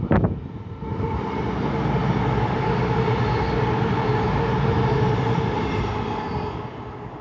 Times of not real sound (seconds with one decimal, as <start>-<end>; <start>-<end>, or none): none